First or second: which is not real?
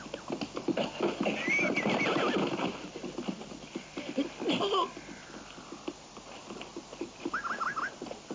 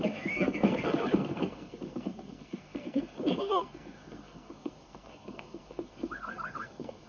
second